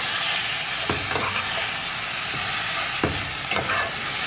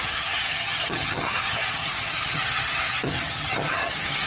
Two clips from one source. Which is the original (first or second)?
first